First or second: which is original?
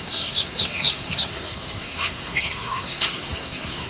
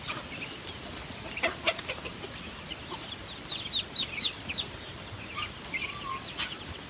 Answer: second